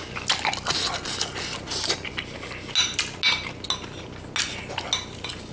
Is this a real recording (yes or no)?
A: yes